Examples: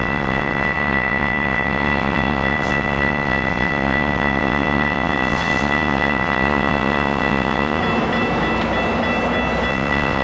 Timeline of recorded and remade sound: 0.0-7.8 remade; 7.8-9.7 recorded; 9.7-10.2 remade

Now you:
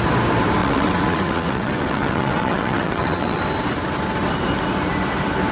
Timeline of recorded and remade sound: 0.0-0.6 recorded; 0.6-3.4 remade; 3.4-5.5 recorded

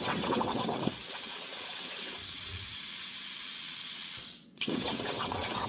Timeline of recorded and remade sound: 0.0-5.7 remade

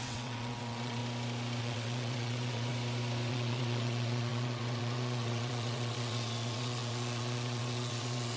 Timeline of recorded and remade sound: 0.0-1.0 remade; 1.0-1.6 recorded; 1.6-2.7 remade; 2.7-3.3 recorded; 3.3-8.4 remade

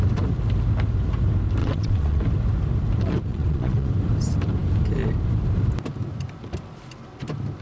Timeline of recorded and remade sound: 0.0-1.6 recorded; 1.6-2.2 remade; 2.2-3.3 recorded; 3.3-3.9 remade; 3.9-7.6 recorded

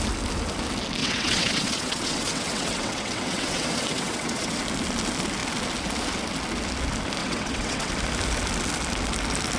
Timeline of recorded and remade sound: 0.0-1.0 recorded; 1.0-4.6 remade; 4.6-7.2 recorded; 7.2-7.9 remade; 7.9-9.6 recorded